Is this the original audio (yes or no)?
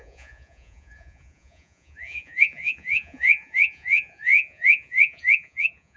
no